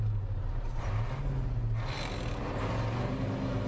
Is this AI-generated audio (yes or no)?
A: no